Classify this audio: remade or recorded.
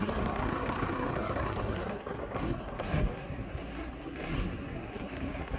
remade